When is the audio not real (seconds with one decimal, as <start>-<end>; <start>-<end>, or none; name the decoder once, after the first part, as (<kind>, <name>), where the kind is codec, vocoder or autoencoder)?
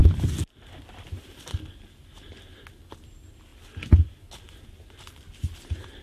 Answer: none